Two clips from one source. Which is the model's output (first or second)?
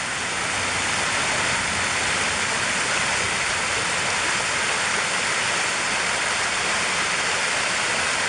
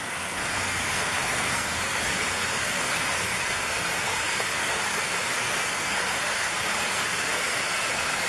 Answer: second